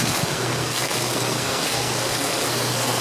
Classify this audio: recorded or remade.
remade